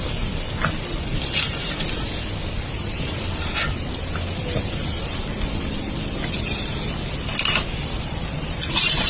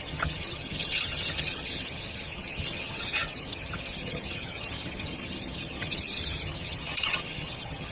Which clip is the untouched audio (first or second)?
first